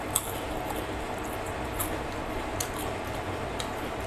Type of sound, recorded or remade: recorded